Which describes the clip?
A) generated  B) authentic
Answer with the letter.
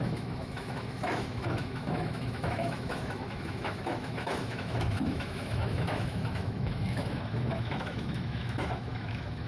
A